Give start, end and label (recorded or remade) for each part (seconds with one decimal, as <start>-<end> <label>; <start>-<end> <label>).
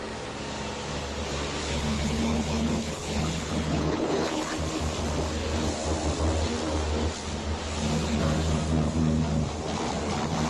0.0-1.6 recorded; 1.6-4.5 remade; 4.5-10.5 recorded